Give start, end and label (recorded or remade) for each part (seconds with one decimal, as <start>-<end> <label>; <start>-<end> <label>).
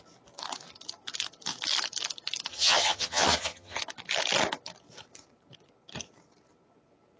0.0-2.5 recorded; 2.5-3.8 remade; 3.8-7.2 recorded